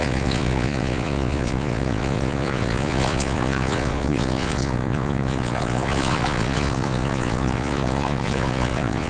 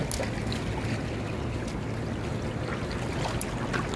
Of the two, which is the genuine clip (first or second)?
second